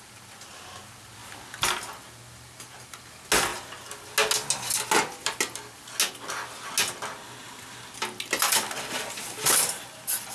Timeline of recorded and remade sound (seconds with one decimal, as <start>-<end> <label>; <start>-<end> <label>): 0.0-10.3 recorded